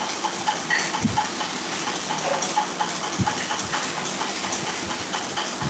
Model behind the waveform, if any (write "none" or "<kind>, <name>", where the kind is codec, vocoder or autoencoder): none